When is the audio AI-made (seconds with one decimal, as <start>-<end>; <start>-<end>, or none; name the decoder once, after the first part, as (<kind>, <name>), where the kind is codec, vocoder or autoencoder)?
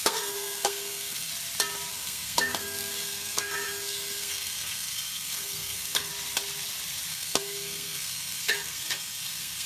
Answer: 0.0-1.3 (codec, SNAC); 1.9-6.1; 7.1-9.7